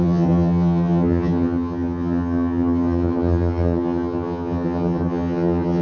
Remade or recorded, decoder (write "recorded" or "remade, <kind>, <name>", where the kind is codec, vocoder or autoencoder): remade, vocoder, HiFi-GAN